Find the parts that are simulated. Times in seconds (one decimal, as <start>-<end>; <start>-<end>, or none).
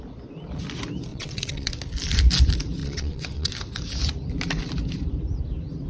1.1-1.7; 2.8-3.5